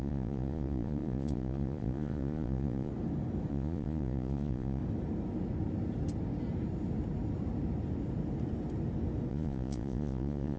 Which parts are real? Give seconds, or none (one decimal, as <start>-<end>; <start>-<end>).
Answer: 2.9-3.5; 4.8-9.3